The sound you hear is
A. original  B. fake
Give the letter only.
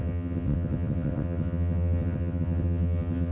B